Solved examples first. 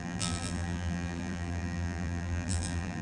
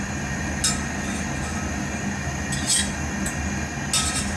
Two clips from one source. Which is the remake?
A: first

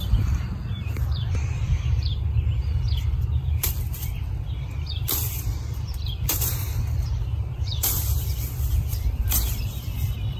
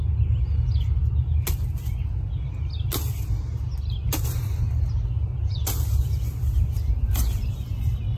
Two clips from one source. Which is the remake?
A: first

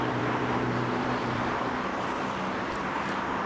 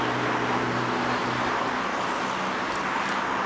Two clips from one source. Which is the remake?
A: first